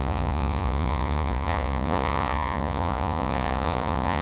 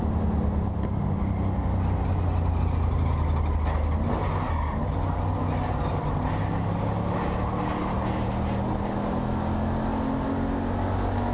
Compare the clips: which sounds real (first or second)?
second